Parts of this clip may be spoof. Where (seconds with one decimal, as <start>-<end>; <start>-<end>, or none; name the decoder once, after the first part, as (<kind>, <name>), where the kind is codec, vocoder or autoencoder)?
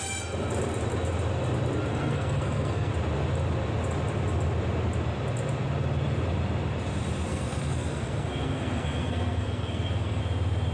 1.9-2.9 (codec, SNAC); 7.3-10.2